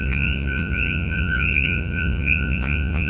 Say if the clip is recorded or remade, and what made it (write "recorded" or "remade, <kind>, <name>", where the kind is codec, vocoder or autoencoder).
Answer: remade, vocoder, Vocos